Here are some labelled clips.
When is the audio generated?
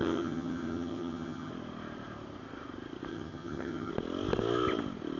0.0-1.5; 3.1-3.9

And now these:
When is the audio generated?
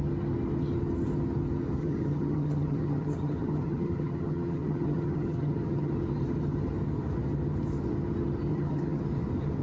1.8-5.9; 8.5-9.0